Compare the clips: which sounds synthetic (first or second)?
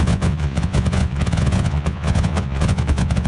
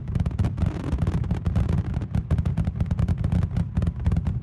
first